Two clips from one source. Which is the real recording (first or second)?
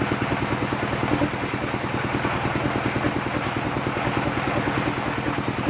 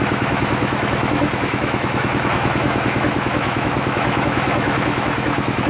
first